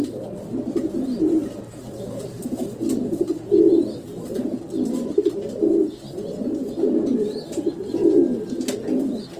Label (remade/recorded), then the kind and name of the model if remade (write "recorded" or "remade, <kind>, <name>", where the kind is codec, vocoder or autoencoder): recorded